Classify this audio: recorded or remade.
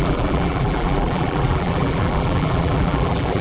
remade